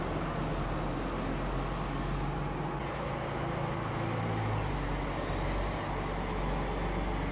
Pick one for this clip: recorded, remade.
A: recorded